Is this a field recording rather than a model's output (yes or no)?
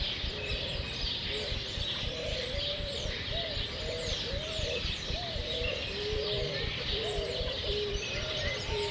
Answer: no